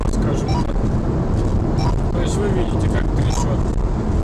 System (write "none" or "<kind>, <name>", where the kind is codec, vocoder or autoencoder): none